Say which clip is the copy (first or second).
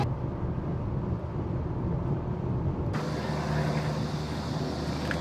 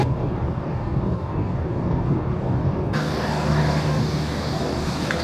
second